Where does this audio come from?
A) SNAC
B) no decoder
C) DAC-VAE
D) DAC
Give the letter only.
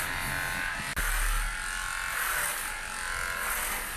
B